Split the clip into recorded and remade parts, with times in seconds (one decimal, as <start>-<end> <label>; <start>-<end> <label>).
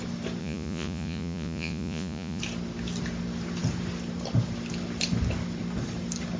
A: 0.0-0.4 recorded; 0.4-2.4 remade; 2.4-6.4 recorded